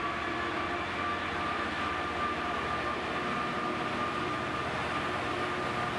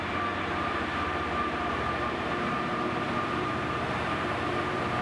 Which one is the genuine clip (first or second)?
first